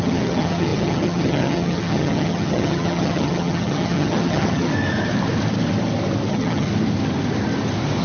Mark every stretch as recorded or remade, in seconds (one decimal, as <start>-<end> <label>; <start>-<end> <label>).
0.0-4.7 remade; 4.7-6.3 recorded; 6.3-6.7 remade; 6.7-8.0 recorded